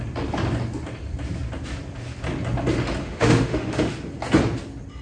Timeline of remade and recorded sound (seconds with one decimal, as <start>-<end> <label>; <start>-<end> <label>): 0.0-3.0 recorded; 3.0-3.9 remade; 3.9-5.0 recorded